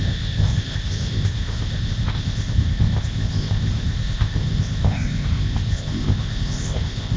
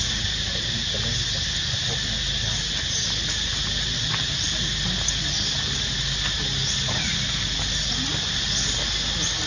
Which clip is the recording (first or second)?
second